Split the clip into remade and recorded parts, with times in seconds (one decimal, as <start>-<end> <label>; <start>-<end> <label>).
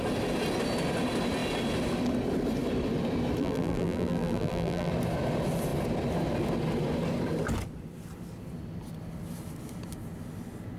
0.0-3.4 recorded; 3.4-4.9 remade; 4.9-10.8 recorded